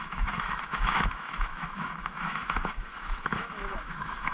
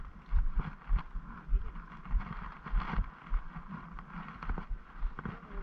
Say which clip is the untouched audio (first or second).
second